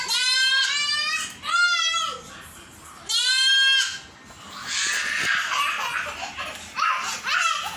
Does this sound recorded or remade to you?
recorded